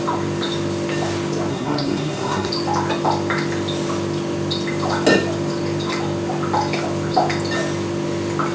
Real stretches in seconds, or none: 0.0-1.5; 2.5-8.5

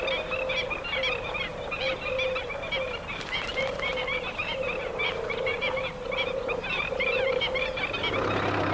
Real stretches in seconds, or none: 0.0-3.5; 7.4-8.7

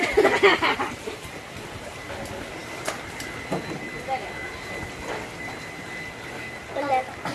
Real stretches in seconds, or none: 0.0-0.5; 2.1-7.3